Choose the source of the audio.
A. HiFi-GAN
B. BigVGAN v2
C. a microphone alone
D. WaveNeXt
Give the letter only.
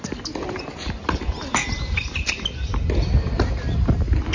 C